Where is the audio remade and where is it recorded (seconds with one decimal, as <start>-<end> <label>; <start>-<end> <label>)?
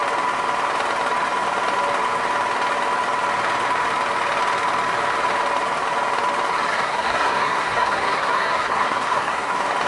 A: 0.0-6.7 recorded; 6.7-9.5 remade; 9.5-9.9 recorded